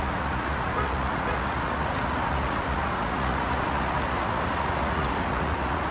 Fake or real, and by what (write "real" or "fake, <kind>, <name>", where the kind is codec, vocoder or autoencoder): fake, vocoder, Vocos